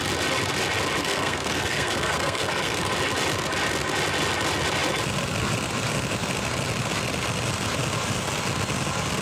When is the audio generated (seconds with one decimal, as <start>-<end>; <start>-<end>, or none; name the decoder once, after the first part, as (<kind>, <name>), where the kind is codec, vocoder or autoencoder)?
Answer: 1.0-2.9 (codec, SNAC)